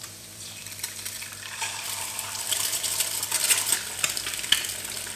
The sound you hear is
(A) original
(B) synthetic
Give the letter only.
B